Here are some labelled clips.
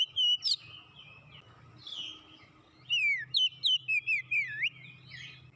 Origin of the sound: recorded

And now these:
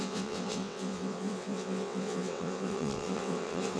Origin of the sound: remade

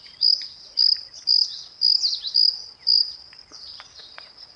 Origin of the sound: recorded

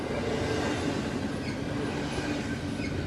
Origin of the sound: recorded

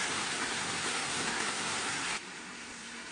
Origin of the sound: remade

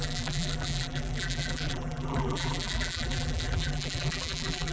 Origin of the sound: remade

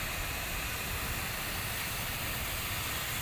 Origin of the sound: recorded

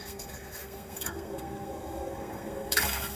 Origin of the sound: remade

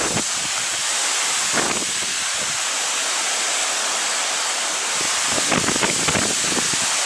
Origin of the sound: recorded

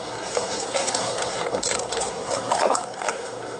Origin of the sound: remade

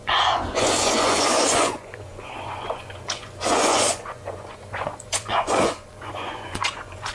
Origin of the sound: remade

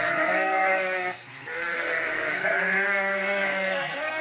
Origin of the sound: remade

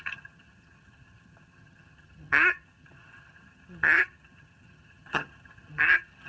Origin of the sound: remade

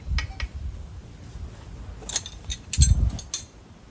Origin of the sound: recorded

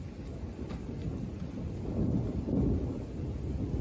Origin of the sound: recorded